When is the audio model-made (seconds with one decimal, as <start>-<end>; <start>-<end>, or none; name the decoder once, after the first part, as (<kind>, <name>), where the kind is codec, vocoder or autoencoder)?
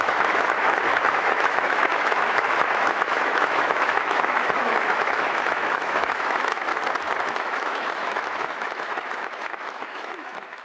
0.0-6.7 (autoencoder, DAC-VAE); 7.2-10.6